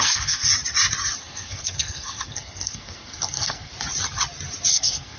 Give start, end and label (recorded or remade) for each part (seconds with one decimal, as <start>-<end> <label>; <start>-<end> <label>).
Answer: 0.0-0.5 remade; 0.5-1.2 recorded; 1.2-3.7 remade; 3.7-4.7 recorded; 4.7-5.2 remade